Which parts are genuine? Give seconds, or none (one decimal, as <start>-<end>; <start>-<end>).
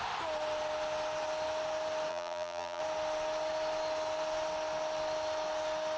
0.0-2.1; 2.8-6.0